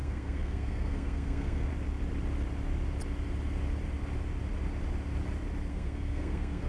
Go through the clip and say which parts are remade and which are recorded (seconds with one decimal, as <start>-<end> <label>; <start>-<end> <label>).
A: 0.0-1.7 remade; 1.7-5.7 recorded; 5.7-6.7 remade